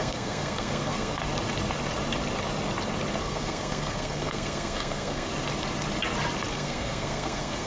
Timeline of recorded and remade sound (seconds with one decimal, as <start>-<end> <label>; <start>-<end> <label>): 0.0-1.2 remade; 1.2-3.2 recorded; 3.2-5.3 remade; 5.3-6.5 recorded; 6.5-7.7 remade